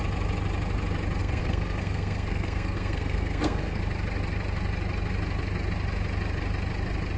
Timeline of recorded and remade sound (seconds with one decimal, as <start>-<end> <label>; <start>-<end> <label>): 0.0-1.2 recorded; 1.2-3.8 remade; 3.8-7.2 recorded